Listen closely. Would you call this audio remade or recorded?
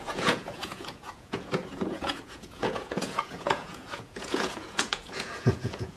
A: remade